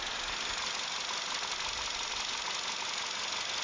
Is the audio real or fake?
real